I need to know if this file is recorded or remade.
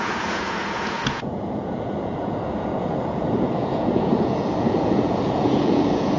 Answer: remade